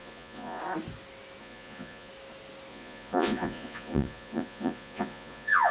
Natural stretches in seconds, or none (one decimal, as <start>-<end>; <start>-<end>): 0.6-1.4; 2.1-2.7